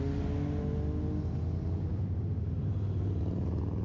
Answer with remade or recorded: recorded